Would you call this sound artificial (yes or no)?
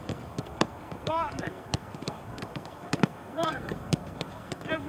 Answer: yes